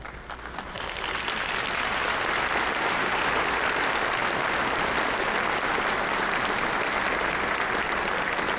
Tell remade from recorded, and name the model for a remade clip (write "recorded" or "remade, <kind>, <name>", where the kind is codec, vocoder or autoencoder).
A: recorded